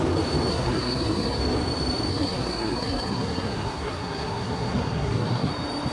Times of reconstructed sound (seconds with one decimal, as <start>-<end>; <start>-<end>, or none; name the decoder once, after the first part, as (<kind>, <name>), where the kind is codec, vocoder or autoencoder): 0.5-1.4 (codec, SNAC); 2.1-5.5